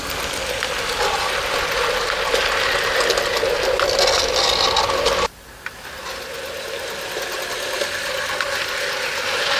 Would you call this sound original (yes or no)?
yes